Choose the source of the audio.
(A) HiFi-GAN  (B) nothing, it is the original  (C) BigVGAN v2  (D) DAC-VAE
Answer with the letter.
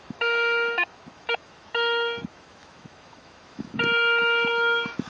D